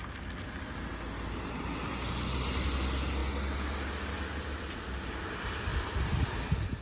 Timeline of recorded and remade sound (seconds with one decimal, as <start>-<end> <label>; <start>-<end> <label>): 0.0-5.7 recorded; 5.7-6.8 remade